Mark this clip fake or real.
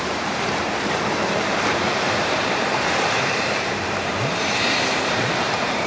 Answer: fake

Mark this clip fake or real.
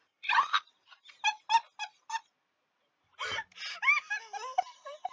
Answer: real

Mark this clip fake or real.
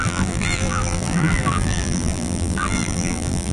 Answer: fake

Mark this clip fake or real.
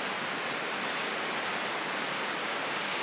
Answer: real